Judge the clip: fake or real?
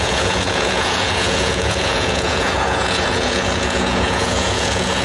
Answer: fake